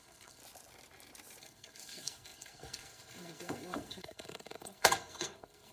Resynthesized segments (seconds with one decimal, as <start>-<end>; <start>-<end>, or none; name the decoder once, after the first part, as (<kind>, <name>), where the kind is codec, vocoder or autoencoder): 0.0-0.4 (codec, SNAC); 1.4-5.7